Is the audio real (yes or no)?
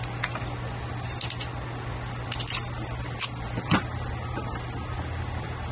yes